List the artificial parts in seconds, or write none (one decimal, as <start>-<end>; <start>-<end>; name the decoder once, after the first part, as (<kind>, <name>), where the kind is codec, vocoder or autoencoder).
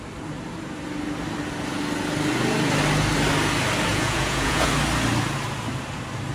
3.9-4.7 (vocoder, Vocos)